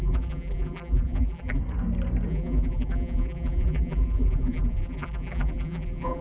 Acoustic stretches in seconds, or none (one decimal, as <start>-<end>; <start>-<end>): 1.6-2.3